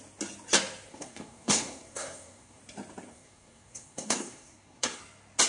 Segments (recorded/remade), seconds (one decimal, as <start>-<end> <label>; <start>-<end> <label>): 0.0-0.9 recorded; 0.9-2.6 remade; 2.6-3.1 recorded; 3.1-5.0 remade; 5.0-5.5 recorded